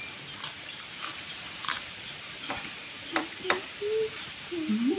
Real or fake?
fake